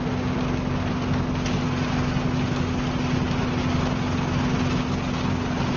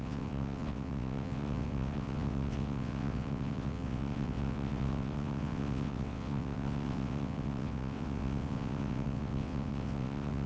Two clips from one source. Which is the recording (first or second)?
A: first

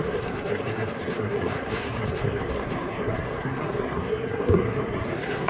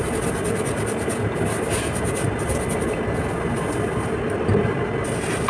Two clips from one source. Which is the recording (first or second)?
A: second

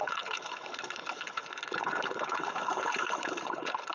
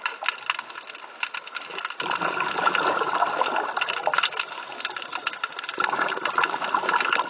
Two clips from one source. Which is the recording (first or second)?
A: second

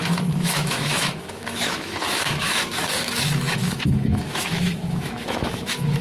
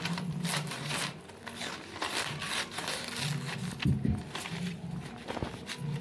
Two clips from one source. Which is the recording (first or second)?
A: second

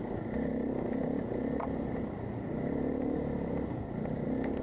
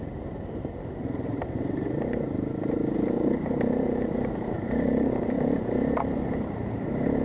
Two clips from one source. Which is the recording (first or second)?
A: first